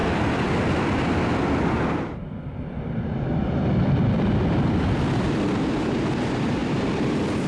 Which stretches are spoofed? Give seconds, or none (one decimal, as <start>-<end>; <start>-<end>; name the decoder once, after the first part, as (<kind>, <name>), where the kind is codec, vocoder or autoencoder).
0.0-7.5 (vocoder, BigVGAN v2)